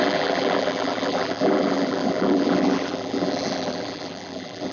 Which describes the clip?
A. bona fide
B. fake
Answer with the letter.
B